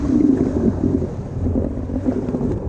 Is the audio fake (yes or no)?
yes